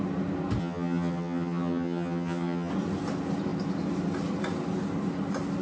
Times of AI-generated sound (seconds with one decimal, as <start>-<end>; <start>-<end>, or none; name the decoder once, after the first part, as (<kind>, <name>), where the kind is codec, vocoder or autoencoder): 0.6-2.7 (vocoder, HiFi-GAN)